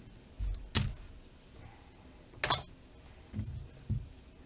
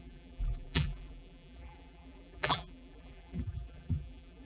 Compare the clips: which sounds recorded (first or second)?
first